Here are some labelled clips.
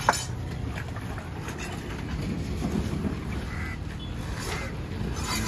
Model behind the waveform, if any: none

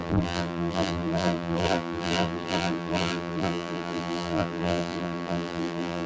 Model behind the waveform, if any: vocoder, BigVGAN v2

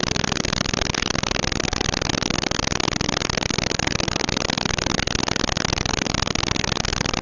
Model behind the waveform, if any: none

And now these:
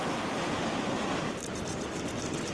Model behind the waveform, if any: none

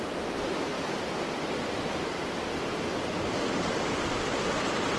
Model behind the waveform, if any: vocoder, BigVGAN v2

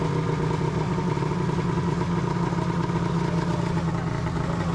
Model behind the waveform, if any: none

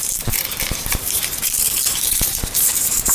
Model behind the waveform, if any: vocoder, BigVGAN v2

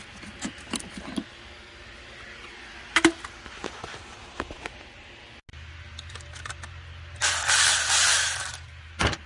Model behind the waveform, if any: none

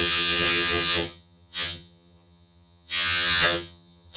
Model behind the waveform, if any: vocoder, HiFi-GAN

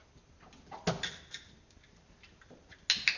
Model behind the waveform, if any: none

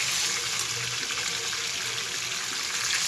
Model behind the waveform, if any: none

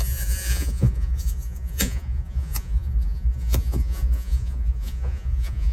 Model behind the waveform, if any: vocoder, Vocos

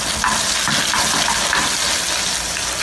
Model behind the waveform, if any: none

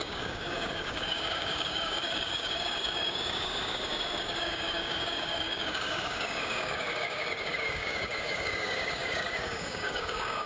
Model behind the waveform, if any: codec, DAC